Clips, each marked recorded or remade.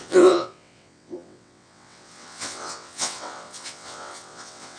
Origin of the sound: remade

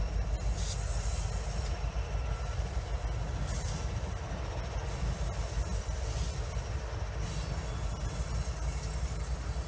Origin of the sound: recorded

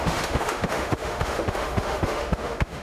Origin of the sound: remade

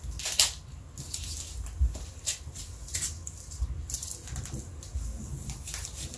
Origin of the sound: recorded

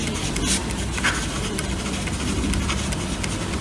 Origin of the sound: recorded